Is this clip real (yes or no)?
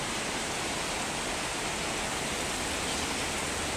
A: yes